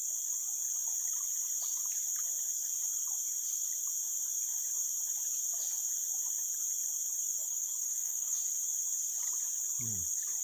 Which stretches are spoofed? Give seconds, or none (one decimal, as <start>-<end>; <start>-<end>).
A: 7.4-8.4

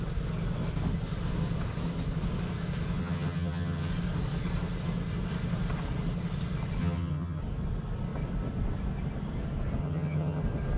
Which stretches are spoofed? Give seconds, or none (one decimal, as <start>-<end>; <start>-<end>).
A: 3.0-3.9; 6.8-7.4; 9.8-10.4

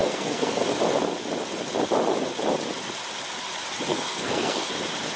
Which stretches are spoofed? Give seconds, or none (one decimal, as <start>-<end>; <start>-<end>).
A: 0.0-0.6; 3.9-4.7

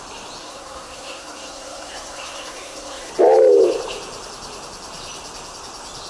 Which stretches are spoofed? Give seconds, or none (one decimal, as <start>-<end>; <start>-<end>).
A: 0.4-3.1

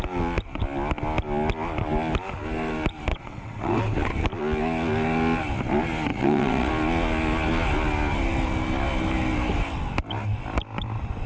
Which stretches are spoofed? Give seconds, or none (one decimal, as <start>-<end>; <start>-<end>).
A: 3.1-3.8; 6.1-6.7

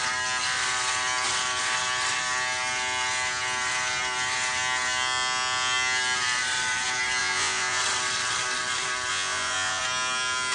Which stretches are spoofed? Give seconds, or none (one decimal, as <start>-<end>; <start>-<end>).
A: 7.2-7.8; 9.1-9.8

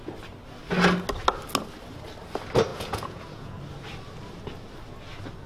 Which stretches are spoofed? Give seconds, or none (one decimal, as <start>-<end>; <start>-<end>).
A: 2.7-3.6